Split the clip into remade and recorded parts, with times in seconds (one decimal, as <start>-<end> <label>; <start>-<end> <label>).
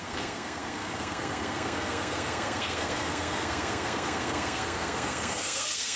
0.0-6.0 remade